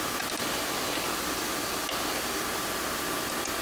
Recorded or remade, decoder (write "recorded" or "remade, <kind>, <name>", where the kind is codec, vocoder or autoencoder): recorded